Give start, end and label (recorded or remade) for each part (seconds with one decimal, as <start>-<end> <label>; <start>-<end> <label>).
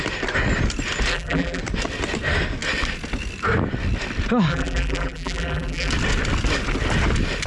0.0-1.1 recorded; 1.1-1.6 remade; 1.6-4.5 recorded; 4.5-5.9 remade; 5.9-7.5 recorded